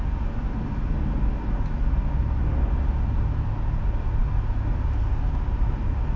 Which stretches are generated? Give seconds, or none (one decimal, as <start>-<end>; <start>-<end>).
none